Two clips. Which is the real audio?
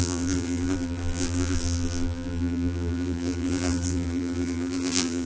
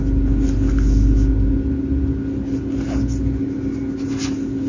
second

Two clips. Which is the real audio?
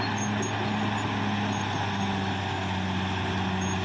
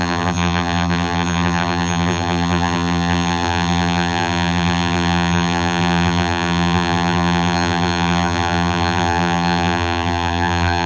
first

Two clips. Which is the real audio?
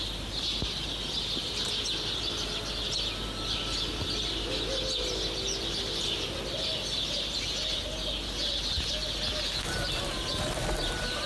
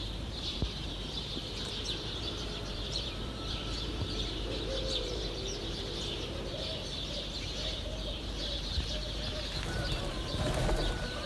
first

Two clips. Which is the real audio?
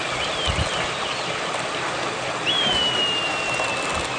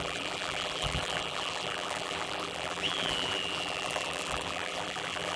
first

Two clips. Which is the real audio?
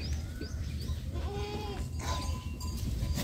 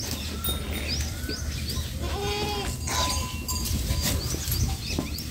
second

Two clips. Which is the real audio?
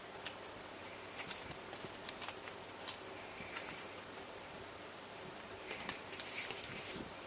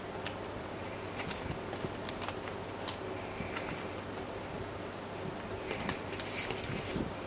second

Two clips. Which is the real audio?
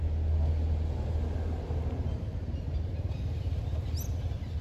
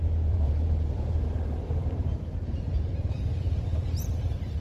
first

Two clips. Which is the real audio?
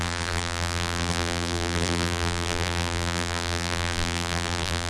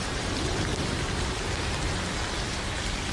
second